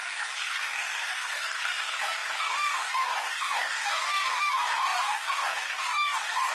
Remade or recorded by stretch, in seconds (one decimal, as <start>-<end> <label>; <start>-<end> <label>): 0.0-6.5 remade